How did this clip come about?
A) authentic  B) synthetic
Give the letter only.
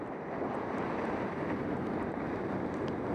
A